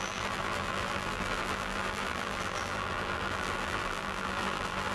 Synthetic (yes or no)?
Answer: yes